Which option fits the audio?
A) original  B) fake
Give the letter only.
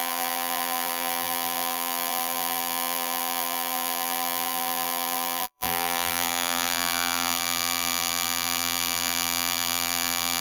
B